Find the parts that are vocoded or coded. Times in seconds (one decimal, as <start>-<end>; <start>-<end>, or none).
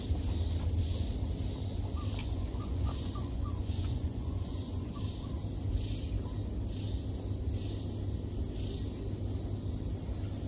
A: 2.2-5.0